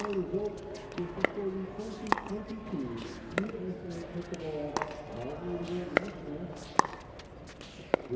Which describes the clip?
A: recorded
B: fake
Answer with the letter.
A